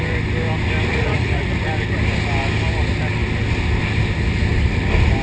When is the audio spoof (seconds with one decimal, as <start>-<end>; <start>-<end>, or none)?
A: 0.9-1.6